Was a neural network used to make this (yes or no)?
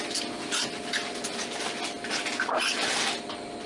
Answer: no